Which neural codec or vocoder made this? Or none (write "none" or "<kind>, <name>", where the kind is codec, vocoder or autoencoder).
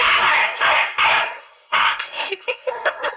codec, SNAC